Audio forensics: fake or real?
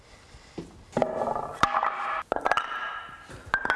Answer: real